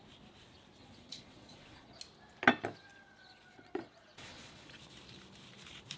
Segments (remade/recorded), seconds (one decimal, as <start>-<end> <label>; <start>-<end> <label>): 0.0-0.8 recorded; 0.8-2.0 remade; 2.0-2.8 recorded; 2.8-4.8 remade; 4.8-6.0 recorded